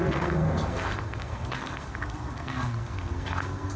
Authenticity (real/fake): fake